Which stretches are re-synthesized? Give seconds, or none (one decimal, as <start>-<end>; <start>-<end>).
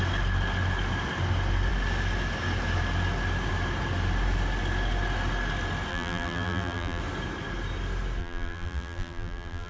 5.9-7.0; 8.2-9.7